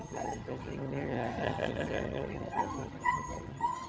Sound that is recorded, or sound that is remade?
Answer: remade